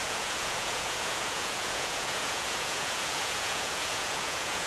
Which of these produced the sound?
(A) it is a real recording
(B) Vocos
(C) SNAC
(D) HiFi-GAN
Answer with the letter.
B